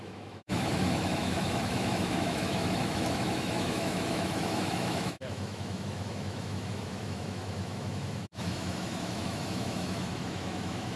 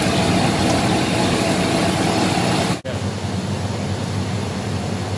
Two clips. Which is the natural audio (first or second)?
second